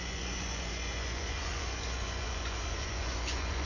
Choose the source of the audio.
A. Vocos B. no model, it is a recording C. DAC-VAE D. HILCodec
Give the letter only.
A